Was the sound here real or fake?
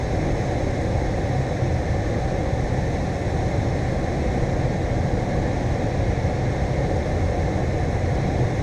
real